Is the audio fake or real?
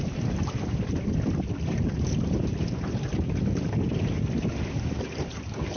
fake